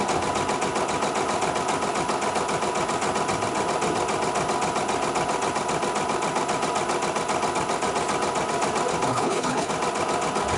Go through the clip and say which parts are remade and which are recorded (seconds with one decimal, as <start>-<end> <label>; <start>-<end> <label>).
0.0-9.1 recorded; 9.1-9.7 remade; 9.7-10.6 recorded